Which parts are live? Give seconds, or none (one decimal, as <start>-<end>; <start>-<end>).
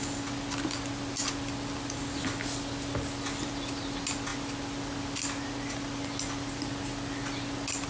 0.0-7.9